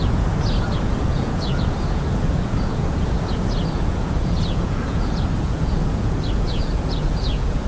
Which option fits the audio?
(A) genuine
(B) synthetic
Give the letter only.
B